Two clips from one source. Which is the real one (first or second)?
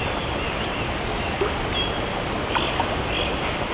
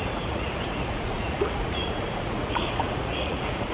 first